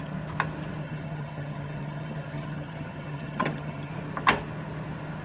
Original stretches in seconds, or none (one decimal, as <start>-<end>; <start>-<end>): 0.0-0.8; 3.9-5.2